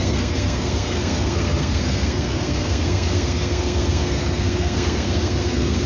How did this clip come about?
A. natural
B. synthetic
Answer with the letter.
B